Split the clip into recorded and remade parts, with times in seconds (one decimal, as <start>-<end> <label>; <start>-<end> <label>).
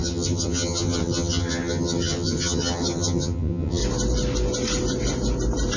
0.0-3.8 remade; 3.8-5.8 recorded